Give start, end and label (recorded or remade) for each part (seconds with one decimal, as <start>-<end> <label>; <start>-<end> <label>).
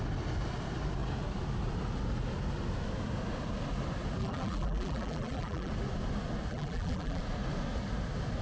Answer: 0.0-4.2 recorded; 4.2-5.7 remade; 5.7-6.5 recorded; 6.5-7.2 remade; 7.2-8.4 recorded